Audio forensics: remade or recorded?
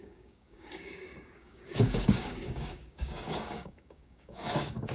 remade